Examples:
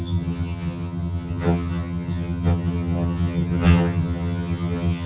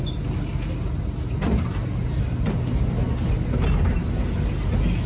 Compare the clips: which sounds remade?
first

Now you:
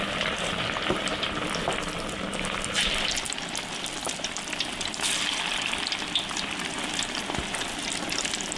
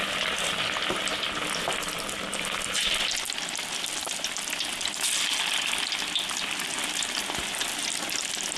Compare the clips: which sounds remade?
first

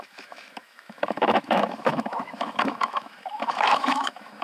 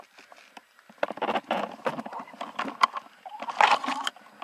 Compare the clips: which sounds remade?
first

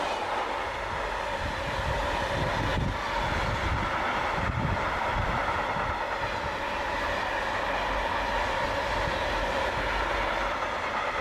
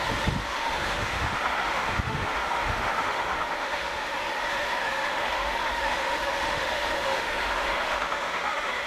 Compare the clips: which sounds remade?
second